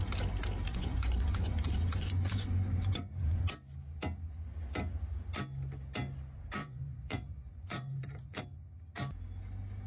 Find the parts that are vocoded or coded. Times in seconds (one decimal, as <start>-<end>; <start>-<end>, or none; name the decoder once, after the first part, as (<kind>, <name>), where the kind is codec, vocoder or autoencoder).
0.7-3.4 (vocoder, Vocos); 6.6-8.4